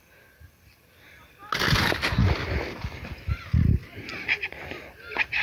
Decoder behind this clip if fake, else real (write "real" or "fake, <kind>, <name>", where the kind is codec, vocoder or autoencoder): real